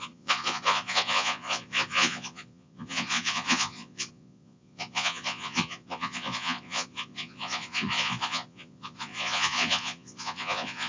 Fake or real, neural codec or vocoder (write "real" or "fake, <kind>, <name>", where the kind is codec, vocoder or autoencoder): fake, vocoder, Vocos